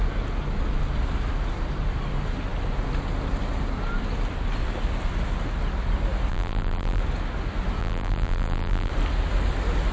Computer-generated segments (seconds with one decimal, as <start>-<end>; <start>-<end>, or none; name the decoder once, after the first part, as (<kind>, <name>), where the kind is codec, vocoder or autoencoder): 6.3-7.0 (vocoder, BigVGAN v2); 7.8-8.9